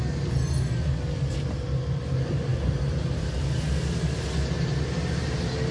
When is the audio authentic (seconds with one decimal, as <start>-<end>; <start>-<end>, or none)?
0.0-5.7